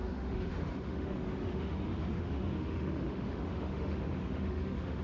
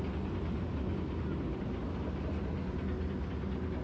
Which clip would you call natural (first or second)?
second